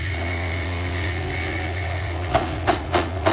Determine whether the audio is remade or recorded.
remade